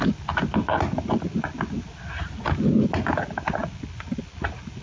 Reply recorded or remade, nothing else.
recorded